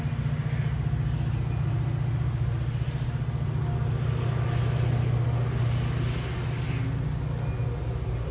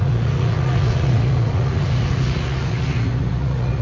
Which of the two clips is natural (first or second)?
first